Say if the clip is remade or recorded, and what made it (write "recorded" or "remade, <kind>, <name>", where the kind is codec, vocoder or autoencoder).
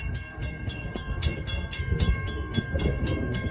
remade, codec, SNAC